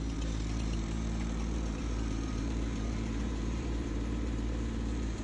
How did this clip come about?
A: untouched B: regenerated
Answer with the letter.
B